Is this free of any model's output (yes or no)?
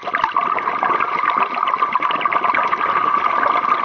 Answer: yes